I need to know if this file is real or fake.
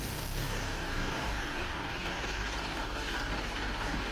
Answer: fake